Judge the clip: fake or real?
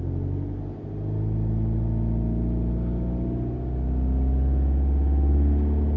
real